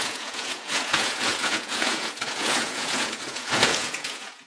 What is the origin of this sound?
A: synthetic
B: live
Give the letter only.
A